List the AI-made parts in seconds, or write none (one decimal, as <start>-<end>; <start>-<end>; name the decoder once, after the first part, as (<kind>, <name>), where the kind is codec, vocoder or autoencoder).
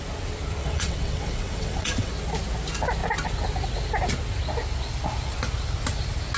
0.6-2.1 (vocoder, WaveNeXt)